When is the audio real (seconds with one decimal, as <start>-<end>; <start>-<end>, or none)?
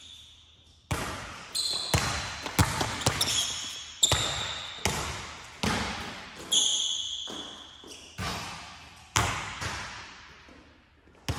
0.0-2.6; 3.3-11.4